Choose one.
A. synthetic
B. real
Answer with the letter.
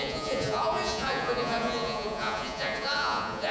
A